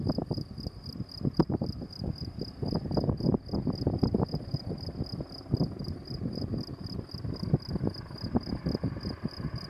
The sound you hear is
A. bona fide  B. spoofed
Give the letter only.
A